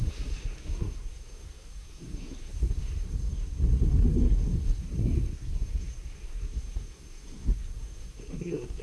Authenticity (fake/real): fake